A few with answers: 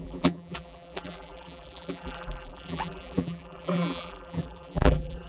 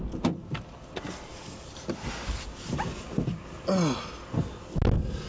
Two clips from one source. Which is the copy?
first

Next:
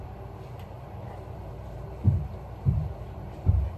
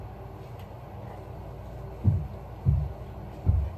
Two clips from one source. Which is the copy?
first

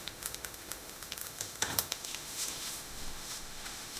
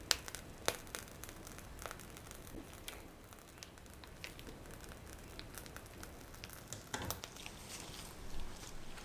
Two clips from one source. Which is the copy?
first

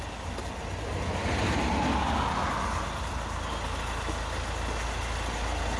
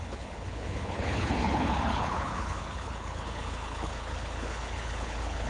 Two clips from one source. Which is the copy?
second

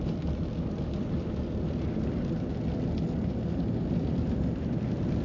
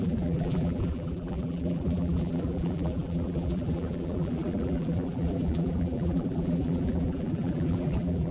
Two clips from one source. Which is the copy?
second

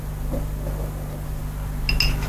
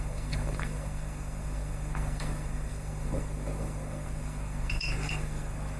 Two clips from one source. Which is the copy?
second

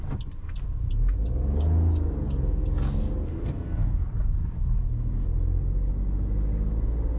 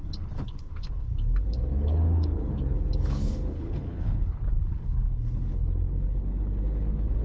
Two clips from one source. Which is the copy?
second